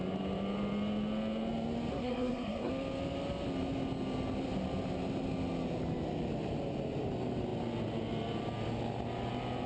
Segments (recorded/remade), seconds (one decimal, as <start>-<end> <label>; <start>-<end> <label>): 0.0-1.9 recorded; 1.9-2.7 remade; 2.7-9.7 recorded